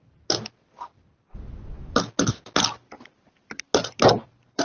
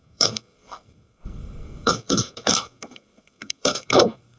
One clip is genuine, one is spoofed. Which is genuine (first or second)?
first